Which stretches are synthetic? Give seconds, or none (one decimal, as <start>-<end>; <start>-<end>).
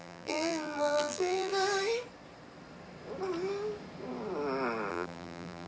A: 0.0-1.5; 4.9-5.7